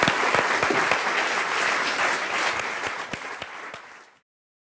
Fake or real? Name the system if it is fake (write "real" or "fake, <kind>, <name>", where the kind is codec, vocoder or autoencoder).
real